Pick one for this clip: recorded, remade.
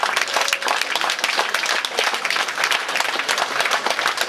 recorded